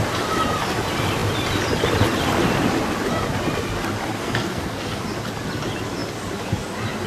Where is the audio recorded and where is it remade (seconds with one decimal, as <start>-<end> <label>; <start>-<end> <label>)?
0.0-4.1 recorded; 4.1-5.0 remade; 5.0-7.1 recorded

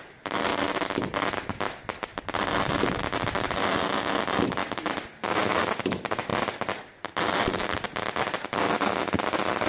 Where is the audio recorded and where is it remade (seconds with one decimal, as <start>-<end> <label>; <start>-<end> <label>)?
0.0-9.7 recorded

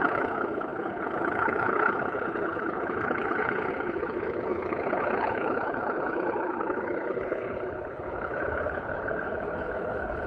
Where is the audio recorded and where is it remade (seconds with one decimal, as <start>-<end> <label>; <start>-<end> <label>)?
0.0-10.3 remade

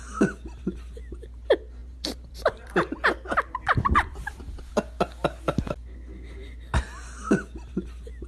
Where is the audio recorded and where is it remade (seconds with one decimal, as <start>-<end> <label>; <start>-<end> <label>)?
0.0-1.8 recorded; 1.8-4.7 remade; 4.7-8.3 recorded